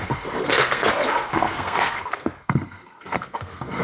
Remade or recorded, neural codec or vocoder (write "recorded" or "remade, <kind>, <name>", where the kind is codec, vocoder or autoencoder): remade, codec, SNAC